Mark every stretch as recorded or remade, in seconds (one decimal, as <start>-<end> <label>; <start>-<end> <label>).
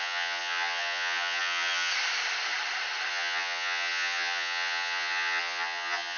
0.0-1.9 remade; 1.9-3.1 recorded; 3.1-6.2 remade